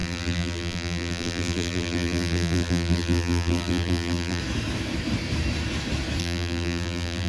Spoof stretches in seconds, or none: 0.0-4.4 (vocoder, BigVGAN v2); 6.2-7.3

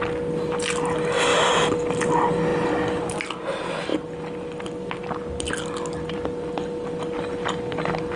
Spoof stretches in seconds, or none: 1.3-2.1 (vocoder, BigVGAN v2); 2.5-3.1; 3.9-5.5

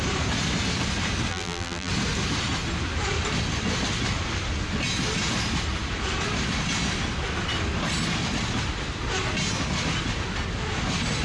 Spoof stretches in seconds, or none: 1.3-1.9 (vocoder, BigVGAN v2)